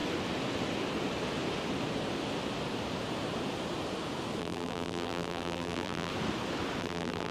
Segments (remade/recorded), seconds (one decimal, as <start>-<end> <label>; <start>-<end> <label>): 0.0-4.4 recorded; 4.4-6.1 remade; 6.1-6.8 recorded; 6.8-7.3 remade